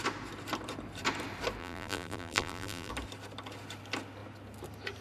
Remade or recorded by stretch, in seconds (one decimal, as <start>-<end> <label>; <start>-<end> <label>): 0.0-1.6 recorded; 1.6-2.9 remade; 2.9-5.0 recorded